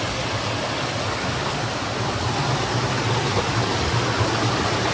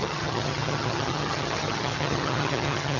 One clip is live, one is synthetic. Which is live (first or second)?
first